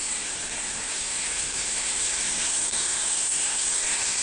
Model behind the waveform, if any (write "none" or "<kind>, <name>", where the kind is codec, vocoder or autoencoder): codec, SNAC